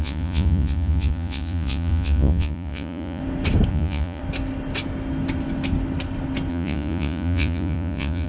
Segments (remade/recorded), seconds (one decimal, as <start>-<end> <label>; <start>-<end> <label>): 0.0-3.2 remade; 3.2-3.7 recorded; 3.7-4.2 remade; 4.2-6.5 recorded; 6.5-8.3 remade